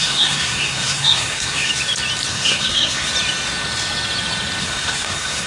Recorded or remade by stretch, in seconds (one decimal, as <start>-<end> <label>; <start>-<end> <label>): 0.0-1.7 remade; 1.7-2.3 recorded; 2.3-3.1 remade; 3.1-4.6 recorded; 4.6-5.5 remade

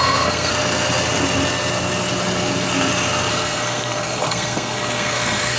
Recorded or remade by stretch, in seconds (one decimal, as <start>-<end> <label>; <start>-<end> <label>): 0.0-0.5 remade; 0.5-3.3 recorded; 3.3-5.6 remade